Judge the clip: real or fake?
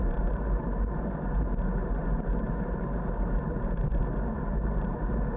fake